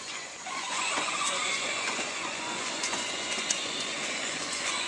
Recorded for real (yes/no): no